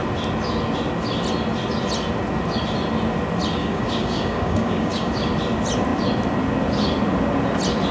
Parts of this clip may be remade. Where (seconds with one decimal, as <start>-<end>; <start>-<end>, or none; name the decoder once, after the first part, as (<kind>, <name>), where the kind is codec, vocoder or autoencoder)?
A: 3.6-5.1 (codec, DAC)